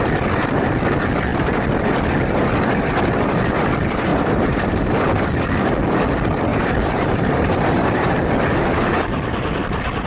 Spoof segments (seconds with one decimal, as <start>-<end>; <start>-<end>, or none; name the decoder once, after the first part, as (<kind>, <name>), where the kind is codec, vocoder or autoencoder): 4.1-5.0 (vocoder, BigVGAN v2); 6.5-8.1